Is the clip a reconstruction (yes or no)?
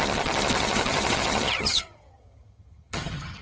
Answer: yes